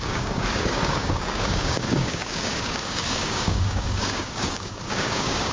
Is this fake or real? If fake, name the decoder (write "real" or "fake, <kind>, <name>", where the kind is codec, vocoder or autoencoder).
fake, codec, DAC